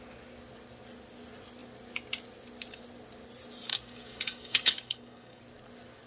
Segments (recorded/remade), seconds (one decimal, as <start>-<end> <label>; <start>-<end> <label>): 0.0-3.7 recorded; 3.7-5.4 remade; 5.4-6.1 recorded